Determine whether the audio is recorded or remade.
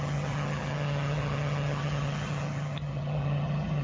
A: remade